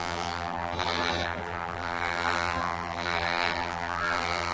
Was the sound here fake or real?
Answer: fake